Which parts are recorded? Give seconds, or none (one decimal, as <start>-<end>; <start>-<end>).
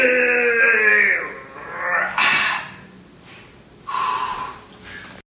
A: 0.0-5.3